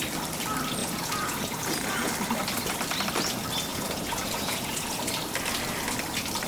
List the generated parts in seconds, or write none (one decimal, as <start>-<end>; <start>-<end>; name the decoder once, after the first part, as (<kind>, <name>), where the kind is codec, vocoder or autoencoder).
0.8-2.1 (vocoder, Vocos); 3.7-5.0